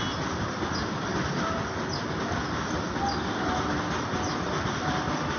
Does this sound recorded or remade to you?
recorded